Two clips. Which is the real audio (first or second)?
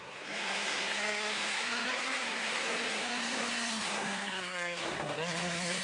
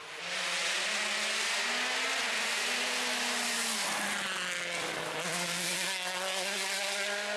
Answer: second